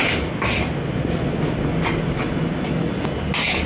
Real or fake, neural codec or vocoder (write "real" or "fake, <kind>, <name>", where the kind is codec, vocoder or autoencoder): real